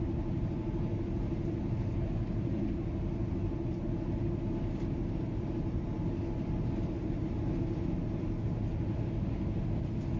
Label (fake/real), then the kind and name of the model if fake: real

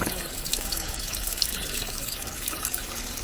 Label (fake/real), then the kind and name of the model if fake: fake, codec, DAC